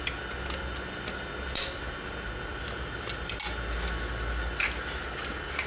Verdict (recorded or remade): recorded